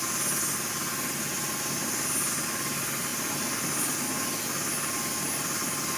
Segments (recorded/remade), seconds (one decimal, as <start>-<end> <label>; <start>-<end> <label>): 0.0-6.0 recorded